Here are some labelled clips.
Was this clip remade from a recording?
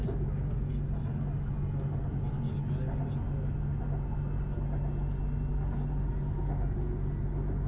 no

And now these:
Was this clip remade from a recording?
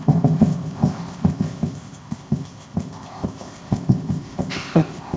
yes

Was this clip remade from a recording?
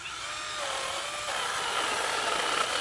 no